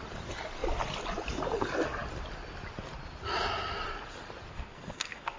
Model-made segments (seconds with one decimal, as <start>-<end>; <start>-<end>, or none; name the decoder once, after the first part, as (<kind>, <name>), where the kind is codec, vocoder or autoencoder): 4.5-5.4 (codec, SNAC)

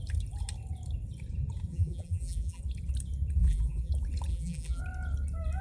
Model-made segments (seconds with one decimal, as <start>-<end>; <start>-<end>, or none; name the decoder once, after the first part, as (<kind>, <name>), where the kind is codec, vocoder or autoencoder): 1.7-2.6 (vocoder, BigVGAN v2); 3.4-3.9; 4.3-4.8

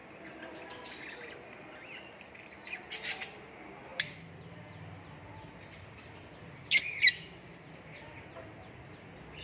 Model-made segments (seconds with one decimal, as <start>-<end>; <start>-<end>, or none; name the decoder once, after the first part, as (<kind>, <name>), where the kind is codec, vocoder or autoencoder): none

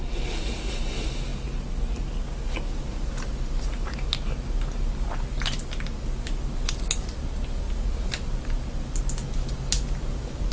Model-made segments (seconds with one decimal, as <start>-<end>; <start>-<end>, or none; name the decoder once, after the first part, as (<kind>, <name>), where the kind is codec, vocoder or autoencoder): 9.2-10.5 (vocoder, BigVGAN v2)